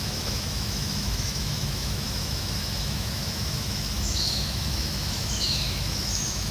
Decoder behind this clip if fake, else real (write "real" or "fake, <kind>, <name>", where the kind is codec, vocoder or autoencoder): fake, autoencoder, DAC-VAE